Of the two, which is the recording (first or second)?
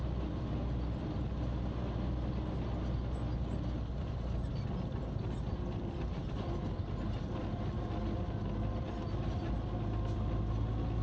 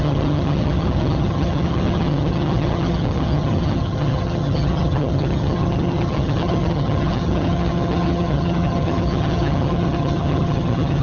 first